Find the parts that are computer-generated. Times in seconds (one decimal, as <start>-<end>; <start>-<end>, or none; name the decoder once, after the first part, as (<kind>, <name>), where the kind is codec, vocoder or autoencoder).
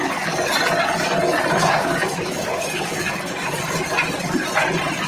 1.6-3.6 (codec, DAC)